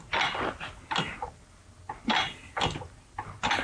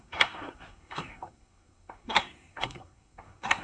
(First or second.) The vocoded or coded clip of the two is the second